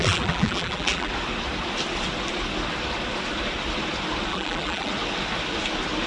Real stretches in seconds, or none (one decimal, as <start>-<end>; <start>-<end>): 1.1-4.3; 4.9-6.1